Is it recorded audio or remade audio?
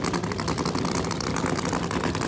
recorded